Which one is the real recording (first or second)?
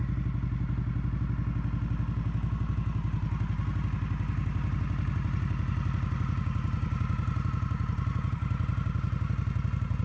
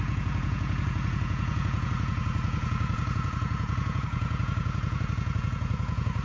first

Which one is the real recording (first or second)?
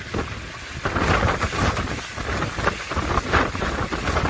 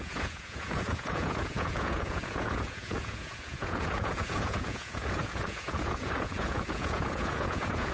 first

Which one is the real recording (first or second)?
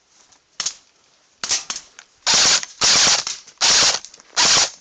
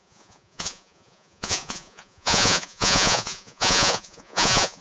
first